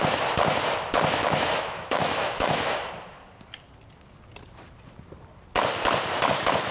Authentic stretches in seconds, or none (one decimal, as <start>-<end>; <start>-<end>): 0.0-1.2; 2.9-6.7

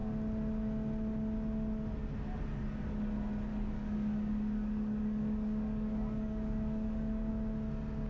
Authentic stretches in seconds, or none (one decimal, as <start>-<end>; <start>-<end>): 0.0-3.5; 7.3-8.1

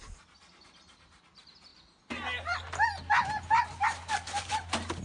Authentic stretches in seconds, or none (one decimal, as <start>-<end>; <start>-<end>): 0.0-5.0

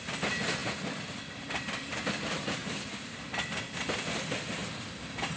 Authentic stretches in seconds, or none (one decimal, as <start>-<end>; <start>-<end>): 0.0-5.4

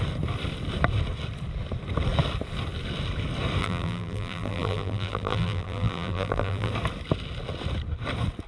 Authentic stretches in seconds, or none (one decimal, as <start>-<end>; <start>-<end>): 0.0-3.6; 6.7-8.5

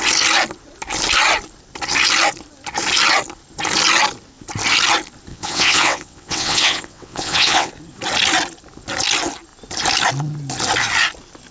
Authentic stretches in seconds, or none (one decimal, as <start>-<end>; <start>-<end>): 0.0-5.3; 7.7-11.5

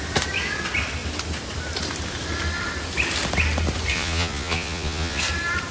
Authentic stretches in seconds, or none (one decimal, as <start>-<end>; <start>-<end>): 0.0-3.9; 5.2-5.7